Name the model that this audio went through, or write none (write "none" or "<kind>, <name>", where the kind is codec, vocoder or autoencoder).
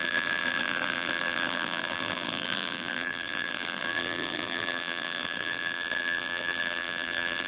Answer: vocoder, BigVGAN v2